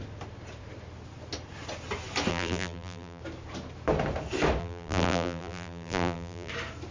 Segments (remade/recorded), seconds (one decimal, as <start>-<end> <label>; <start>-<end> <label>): 0.0-2.3 recorded; 2.3-3.2 remade; 3.2-4.6 recorded; 4.6-6.5 remade; 6.5-6.9 recorded